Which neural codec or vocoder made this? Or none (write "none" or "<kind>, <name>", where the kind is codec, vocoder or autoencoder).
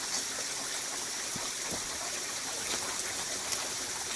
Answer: none